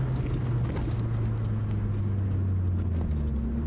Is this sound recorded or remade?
recorded